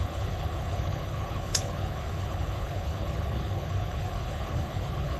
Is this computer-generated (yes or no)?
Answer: yes